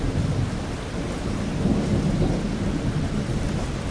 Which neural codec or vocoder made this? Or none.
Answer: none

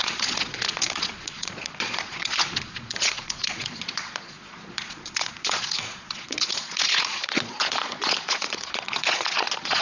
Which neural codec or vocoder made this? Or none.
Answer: vocoder, Vocos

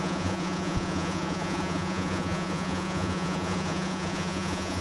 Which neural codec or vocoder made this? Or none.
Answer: vocoder, Vocos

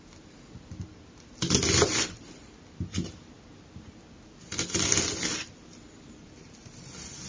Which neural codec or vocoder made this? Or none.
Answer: none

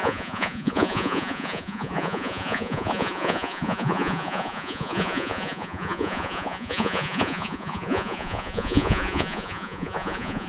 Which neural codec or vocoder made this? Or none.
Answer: vocoder, Vocos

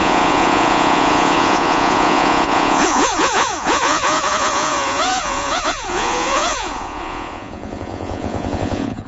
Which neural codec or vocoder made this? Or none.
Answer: vocoder, Vocos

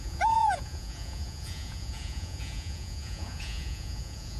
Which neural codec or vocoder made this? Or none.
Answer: vocoder, Vocos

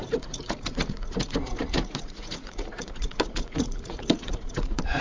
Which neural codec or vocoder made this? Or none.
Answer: vocoder, Vocos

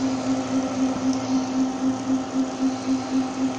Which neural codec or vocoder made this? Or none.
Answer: none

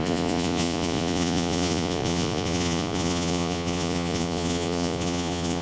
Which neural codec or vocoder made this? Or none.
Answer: vocoder, Vocos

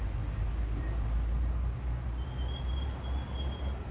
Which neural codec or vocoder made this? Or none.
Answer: none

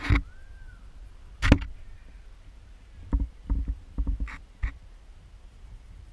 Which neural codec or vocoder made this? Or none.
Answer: none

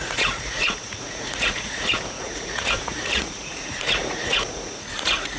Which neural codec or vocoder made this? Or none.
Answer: vocoder, Vocos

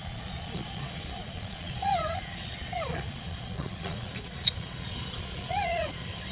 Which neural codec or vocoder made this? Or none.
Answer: vocoder, Vocos